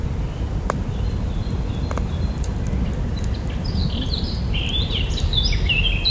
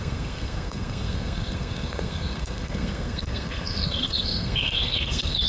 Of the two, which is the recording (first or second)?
first